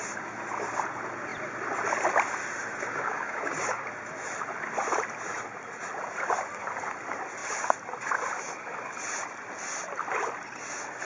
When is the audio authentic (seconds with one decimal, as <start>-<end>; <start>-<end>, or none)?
0.0-2.7; 3.9-11.0